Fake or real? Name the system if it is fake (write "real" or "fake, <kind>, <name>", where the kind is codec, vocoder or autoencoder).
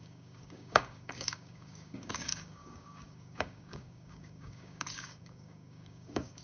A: fake, codec, DAC